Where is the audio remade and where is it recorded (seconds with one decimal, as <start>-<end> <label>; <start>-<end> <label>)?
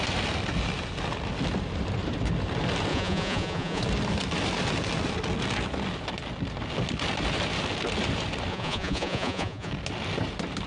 0.0-2.9 recorded; 2.9-3.8 remade; 3.8-8.5 recorded; 8.5-9.7 remade; 9.7-10.7 recorded